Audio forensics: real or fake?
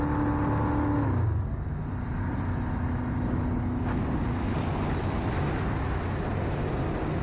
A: real